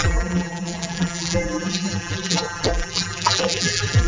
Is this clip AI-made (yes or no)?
yes